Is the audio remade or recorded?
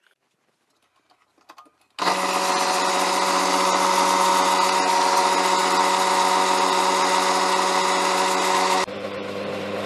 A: recorded